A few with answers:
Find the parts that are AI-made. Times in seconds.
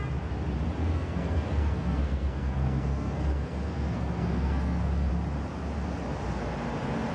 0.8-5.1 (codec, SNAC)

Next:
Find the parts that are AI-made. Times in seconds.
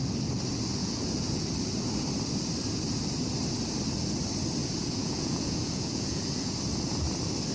0.8-1.4 (vocoder, Vocos); 4.6-6.5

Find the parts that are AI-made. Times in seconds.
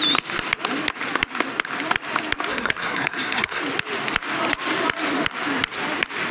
2.5-3.6 (codec, SNAC)